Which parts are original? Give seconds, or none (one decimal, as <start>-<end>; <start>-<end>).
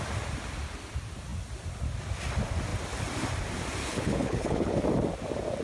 0.0-3.8; 4.8-5.6